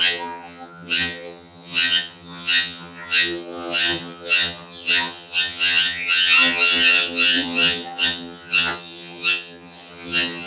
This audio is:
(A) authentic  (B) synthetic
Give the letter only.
B